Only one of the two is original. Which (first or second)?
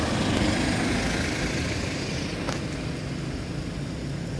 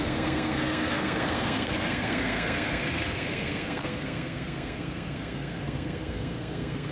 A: first